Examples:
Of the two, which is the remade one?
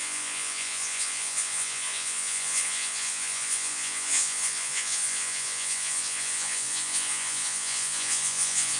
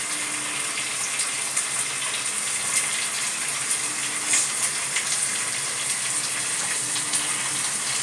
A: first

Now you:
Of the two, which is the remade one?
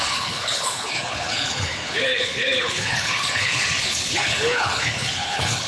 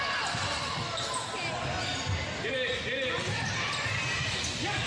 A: first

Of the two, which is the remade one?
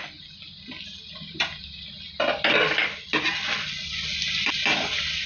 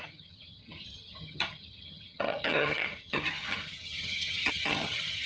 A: second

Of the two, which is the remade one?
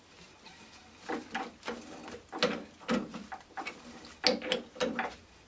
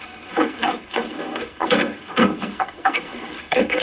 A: second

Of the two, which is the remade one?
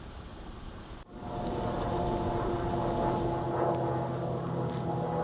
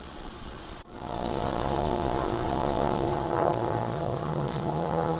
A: second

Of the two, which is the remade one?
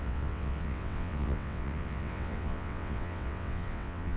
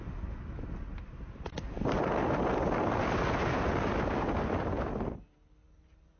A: first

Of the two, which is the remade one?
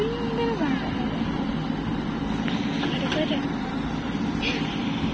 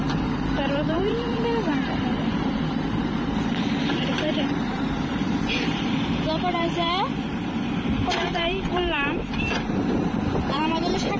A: second